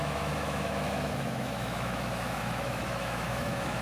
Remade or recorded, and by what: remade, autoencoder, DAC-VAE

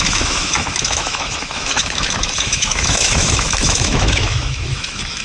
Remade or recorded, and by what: remade, autoencoder, DAC-VAE